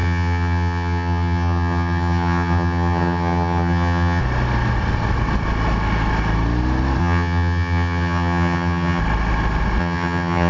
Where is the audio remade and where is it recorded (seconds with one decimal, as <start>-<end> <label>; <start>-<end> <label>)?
0.0-4.2 remade; 4.2-7.0 recorded; 7.0-9.0 remade; 9.0-9.8 recorded; 9.8-10.5 remade